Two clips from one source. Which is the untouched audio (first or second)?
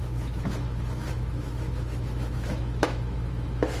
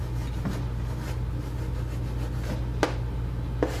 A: second